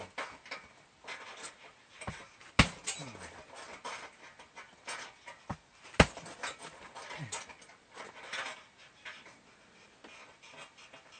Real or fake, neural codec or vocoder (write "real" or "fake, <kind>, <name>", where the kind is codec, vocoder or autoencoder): real